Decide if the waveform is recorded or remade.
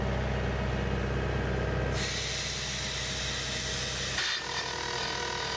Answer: recorded